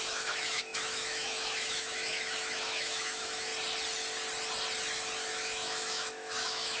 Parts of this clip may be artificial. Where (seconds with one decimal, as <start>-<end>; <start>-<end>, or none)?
0.0-3.5; 5.3-6.8